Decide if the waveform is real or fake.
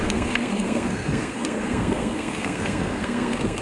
fake